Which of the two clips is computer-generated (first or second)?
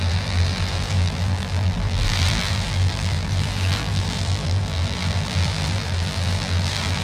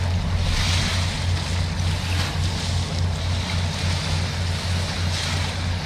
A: first